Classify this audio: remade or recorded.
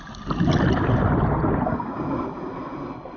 recorded